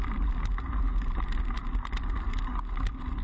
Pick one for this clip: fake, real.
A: real